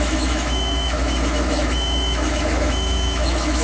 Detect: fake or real fake